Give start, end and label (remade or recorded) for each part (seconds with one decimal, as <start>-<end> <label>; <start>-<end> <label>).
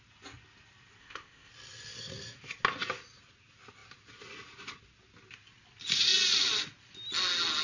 0.0-1.0 recorded; 1.0-1.5 remade; 1.5-7.6 recorded